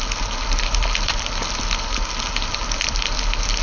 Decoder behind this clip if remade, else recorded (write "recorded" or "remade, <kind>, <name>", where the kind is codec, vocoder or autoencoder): recorded